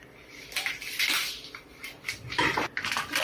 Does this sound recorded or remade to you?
remade